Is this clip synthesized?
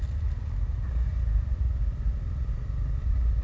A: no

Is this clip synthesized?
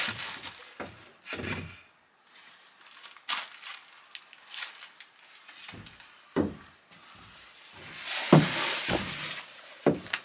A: no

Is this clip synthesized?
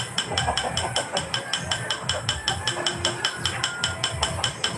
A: yes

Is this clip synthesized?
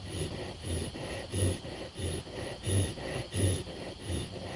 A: no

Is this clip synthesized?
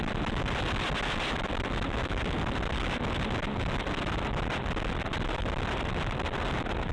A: no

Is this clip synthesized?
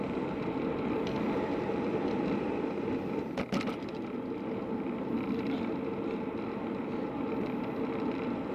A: no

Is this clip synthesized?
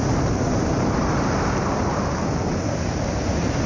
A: yes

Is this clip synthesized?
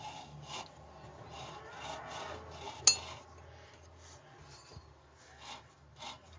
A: no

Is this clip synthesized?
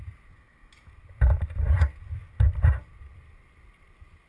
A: no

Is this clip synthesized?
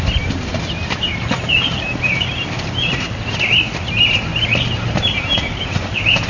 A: yes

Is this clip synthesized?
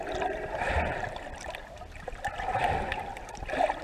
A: no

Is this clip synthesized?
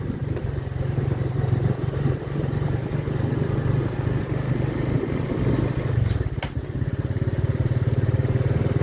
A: yes